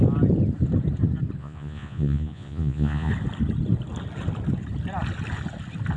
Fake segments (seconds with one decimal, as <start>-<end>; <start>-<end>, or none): 1.4-3.1